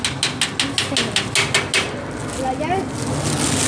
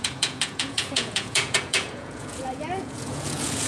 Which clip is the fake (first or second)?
second